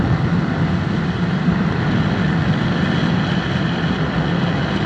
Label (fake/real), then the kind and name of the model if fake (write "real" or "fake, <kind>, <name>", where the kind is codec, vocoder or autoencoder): real